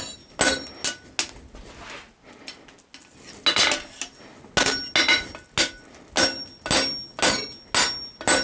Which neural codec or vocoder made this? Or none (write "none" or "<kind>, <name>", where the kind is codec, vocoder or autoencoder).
none